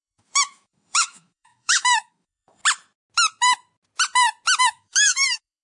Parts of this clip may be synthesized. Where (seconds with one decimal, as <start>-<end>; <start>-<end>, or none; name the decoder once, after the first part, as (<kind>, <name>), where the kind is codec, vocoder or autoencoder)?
0.0-2.6 (autoencoder, DAC-VAE); 4.6-5.6